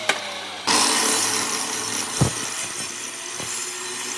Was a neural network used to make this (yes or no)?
no